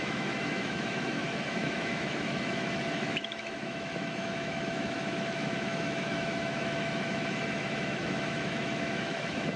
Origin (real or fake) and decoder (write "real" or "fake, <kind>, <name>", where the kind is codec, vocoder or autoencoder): fake, autoencoder, DAC-VAE